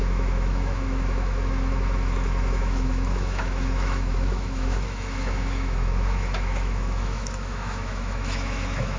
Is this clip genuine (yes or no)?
no